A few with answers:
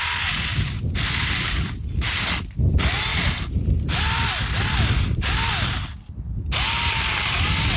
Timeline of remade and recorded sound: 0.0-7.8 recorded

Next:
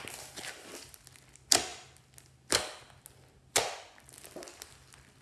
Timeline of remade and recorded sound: 0.0-5.2 recorded

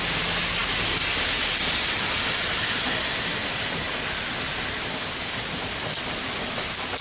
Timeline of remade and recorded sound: 0.0-7.0 recorded

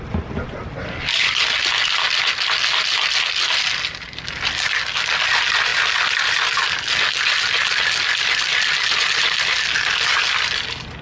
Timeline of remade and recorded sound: 0.0-11.0 recorded

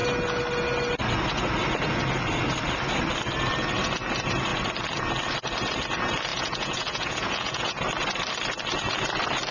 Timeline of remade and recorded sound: 0.0-6.3 recorded; 6.3-7.8 remade; 7.8-9.5 recorded

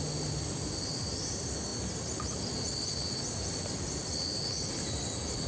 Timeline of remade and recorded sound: 0.0-5.5 recorded

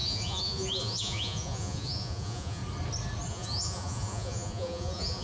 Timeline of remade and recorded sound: 0.0-2.6 remade; 2.6-3.3 recorded; 3.3-5.2 remade

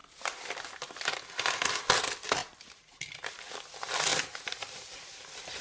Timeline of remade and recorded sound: 0.0-2.4 recorded; 2.4-3.0 remade; 3.0-4.1 recorded; 4.1-5.6 remade